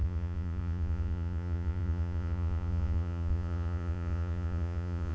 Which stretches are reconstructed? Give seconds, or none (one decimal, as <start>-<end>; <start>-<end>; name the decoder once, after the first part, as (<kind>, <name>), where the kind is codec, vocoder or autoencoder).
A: 0.0-5.1 (vocoder, Vocos)